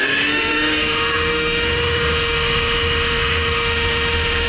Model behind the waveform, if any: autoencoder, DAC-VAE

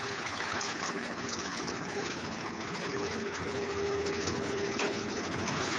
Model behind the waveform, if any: codec, HILCodec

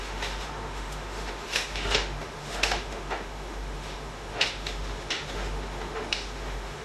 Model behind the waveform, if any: autoencoder, DAC-VAE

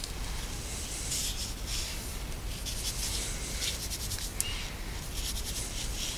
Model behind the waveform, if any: none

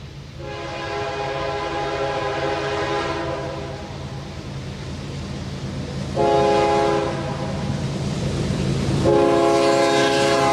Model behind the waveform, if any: none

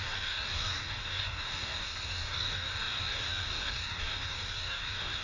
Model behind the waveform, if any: codec, DAC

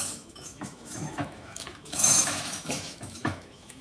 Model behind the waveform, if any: autoencoder, DAC-VAE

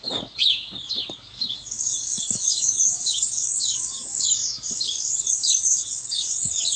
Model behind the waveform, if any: codec, DAC